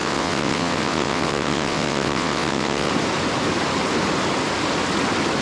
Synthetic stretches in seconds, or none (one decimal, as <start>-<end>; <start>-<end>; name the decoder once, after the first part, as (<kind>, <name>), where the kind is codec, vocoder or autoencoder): 0.0-2.9 (vocoder, WaveNeXt)